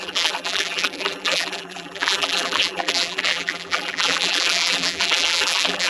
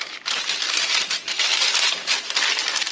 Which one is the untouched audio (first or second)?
second